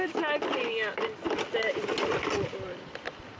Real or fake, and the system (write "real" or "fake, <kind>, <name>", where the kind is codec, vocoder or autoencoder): real